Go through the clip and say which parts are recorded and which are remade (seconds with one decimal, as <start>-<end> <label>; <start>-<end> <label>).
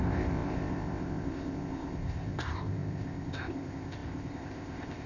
0.0-5.1 remade